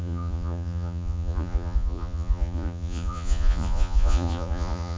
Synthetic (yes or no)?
yes